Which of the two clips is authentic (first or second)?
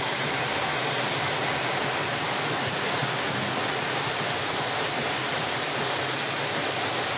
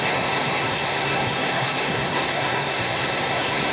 first